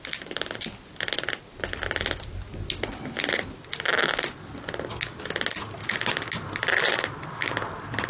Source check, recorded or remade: recorded